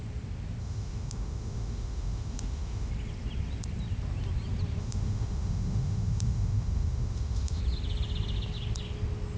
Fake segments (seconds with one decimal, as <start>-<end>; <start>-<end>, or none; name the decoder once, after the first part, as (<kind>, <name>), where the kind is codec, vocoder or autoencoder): 0.6-2.9 (autoencoder, DAC-VAE); 4.8-7.6